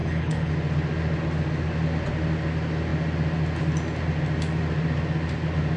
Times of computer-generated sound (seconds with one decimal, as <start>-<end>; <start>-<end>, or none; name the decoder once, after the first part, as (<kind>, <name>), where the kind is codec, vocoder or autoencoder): 0.0-0.5 (codec, HILCodec)